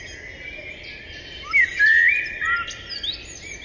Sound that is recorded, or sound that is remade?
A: recorded